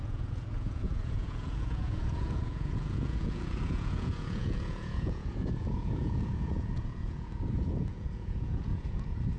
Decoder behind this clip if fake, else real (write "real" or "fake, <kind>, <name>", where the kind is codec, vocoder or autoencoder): fake, vocoder, Vocos